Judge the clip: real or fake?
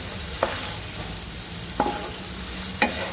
real